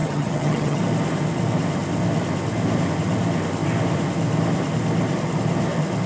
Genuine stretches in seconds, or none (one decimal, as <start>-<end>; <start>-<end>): 0.8-6.1

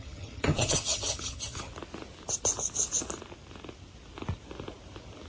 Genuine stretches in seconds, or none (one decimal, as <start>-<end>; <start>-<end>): 1.7-5.3

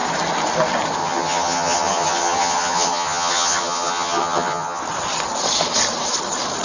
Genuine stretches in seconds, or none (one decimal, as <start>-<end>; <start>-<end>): 0.0-1.0; 4.8-6.6